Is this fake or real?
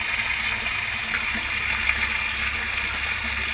real